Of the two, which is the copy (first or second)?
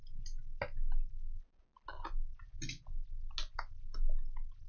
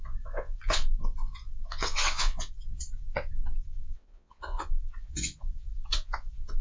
second